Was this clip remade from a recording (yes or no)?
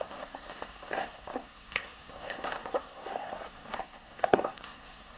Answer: yes